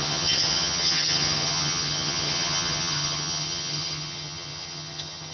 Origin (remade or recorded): remade